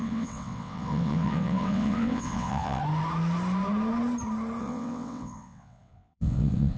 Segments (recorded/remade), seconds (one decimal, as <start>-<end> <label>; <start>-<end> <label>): 0.0-2.8 remade; 2.8-4.6 recorded; 4.6-6.8 remade